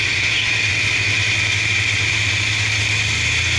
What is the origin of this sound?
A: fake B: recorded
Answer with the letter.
B